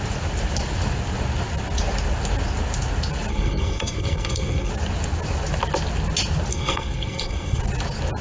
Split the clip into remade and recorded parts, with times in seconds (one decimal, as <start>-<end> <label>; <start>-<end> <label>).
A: 0.0-3.3 recorded; 3.3-4.7 remade; 4.7-6.5 recorded; 6.5-7.6 remade; 7.6-8.2 recorded